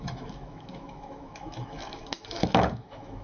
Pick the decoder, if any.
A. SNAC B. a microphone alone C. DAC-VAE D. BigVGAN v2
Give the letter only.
C